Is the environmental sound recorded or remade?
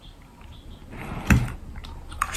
recorded